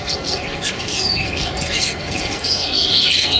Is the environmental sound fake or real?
fake